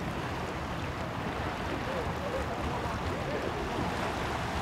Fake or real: real